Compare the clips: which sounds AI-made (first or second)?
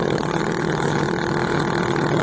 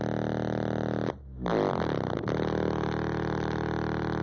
first